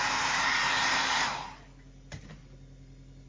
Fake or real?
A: real